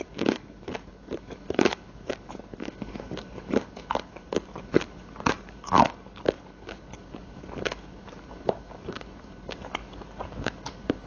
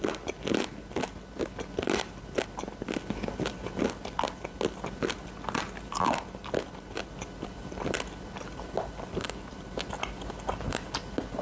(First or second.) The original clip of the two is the second